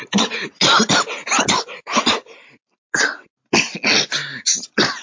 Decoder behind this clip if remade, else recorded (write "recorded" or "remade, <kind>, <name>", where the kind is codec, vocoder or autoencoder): recorded